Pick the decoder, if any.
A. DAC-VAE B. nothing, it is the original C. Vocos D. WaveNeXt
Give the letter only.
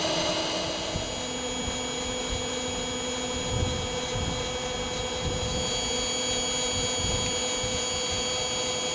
B